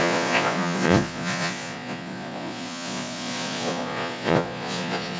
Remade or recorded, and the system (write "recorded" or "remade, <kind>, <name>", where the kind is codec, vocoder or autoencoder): remade, vocoder, Vocos